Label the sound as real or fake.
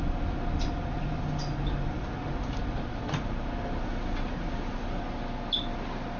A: real